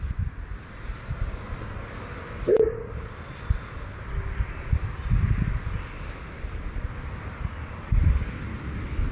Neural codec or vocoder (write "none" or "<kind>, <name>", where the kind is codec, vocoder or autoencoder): none